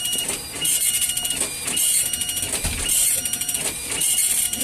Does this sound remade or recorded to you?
recorded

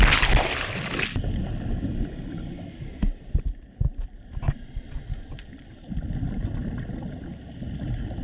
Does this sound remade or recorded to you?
recorded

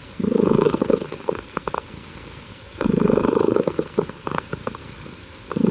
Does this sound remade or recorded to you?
remade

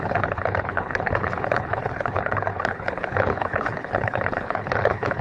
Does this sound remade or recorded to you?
remade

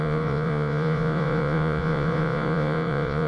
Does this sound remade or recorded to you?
remade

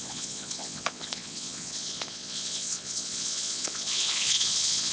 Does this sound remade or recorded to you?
remade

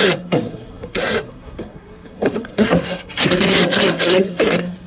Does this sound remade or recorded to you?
remade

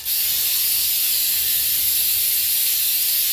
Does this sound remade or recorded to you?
recorded